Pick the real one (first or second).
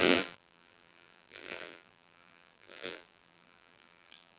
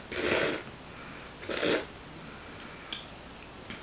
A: second